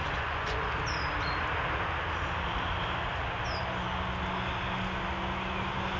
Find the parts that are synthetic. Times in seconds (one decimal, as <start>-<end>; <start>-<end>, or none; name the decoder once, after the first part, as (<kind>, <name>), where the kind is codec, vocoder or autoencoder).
0.0-0.7 (vocoder, Vocos)